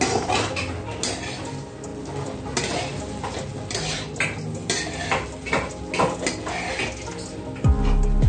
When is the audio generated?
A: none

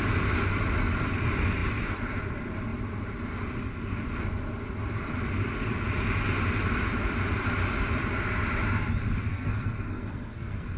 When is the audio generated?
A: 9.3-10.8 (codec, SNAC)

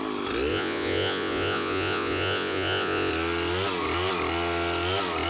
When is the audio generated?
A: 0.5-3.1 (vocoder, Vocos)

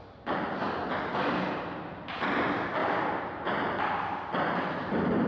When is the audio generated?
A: 0.0-0.8 (vocoder, BigVGAN v2); 1.3-2.8; 4.7-5.3

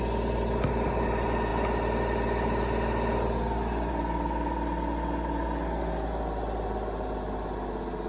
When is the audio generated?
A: none

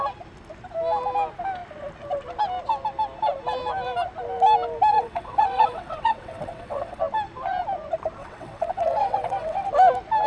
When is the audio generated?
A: 4.9-7.0 (vocoder, WaveNeXt); 8.2-9.7

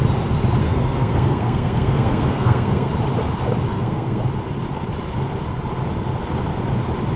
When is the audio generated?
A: 0.6-2.9 (codec, SNAC); 3.7-4.2

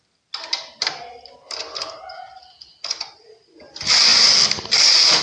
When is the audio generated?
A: none